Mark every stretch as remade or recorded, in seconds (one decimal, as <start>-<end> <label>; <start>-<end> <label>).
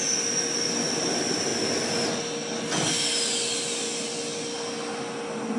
0.0-5.6 recorded